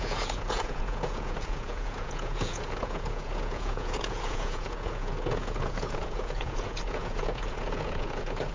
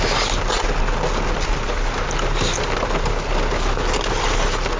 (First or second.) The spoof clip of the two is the first